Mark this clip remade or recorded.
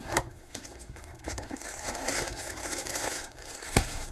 remade